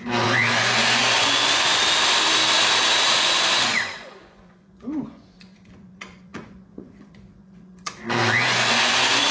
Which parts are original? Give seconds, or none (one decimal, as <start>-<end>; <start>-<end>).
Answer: 1.8-3.1